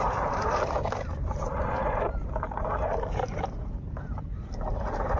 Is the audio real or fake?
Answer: fake